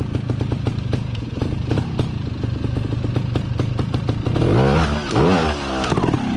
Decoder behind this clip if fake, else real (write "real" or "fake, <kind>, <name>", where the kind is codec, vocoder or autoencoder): real